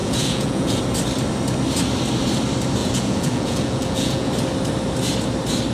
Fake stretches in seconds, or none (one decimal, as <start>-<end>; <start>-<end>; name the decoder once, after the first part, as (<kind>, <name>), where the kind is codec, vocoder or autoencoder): 0.0-0.8 (vocoder, Vocos); 2.8-4.3